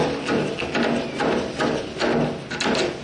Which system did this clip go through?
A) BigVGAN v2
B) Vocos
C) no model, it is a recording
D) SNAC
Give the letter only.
C